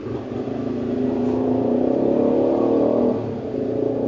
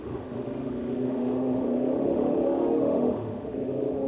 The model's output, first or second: second